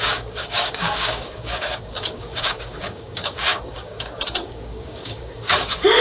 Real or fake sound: fake